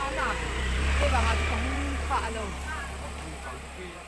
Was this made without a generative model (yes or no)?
no